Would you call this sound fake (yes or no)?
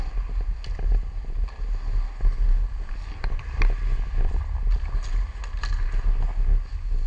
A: no